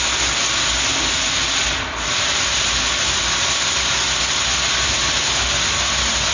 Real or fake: real